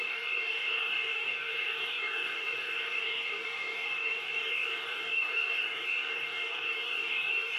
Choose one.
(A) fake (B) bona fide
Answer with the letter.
A